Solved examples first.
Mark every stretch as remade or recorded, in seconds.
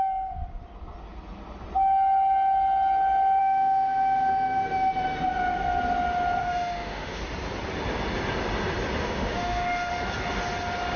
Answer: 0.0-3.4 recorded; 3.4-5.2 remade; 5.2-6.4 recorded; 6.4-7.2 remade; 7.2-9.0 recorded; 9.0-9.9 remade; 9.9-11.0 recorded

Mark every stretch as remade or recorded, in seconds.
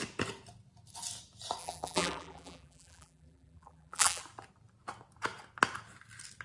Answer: 0.0-1.6 recorded; 1.6-4.2 remade; 4.2-6.4 recorded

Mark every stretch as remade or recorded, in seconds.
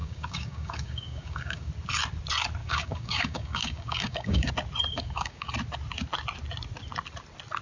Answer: 0.0-1.7 remade; 1.7-2.6 recorded; 2.6-4.5 remade; 4.5-4.9 recorded; 4.9-5.5 remade; 5.5-7.6 recorded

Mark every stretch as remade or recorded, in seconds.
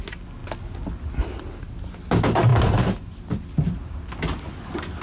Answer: 0.0-5.0 recorded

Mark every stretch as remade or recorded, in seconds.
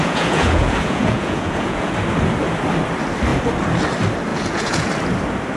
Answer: 0.0-1.9 remade; 1.9-4.3 recorded; 4.3-4.9 remade; 4.9-5.6 recorded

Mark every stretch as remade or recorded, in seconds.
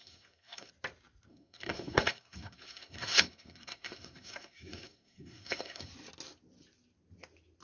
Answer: 0.0-0.7 remade; 0.7-1.3 recorded; 1.3-5.9 remade; 5.9-7.6 recorded